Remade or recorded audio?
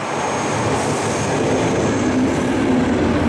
recorded